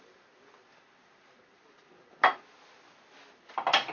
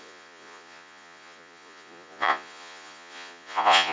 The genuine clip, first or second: first